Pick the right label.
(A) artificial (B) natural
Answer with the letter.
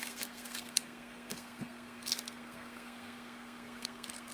A